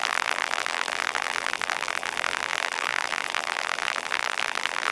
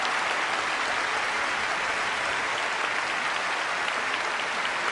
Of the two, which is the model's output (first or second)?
first